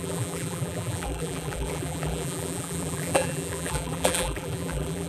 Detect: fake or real fake